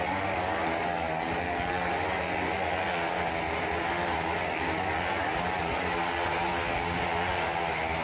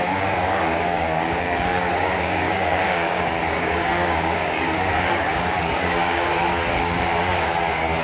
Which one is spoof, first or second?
second